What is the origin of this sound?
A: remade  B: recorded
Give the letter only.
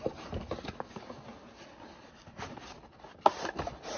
B